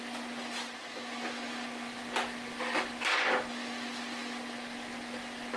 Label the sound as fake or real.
real